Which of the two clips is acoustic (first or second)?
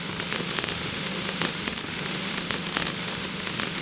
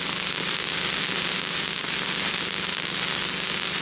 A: second